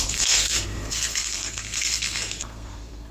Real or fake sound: fake